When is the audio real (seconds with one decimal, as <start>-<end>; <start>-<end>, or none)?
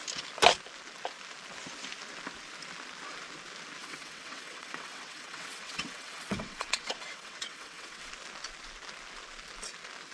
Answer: 0.0-3.8; 8.1-10.1